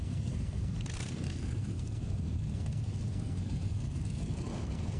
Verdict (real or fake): fake